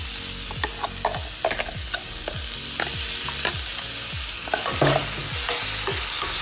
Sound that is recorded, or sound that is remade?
recorded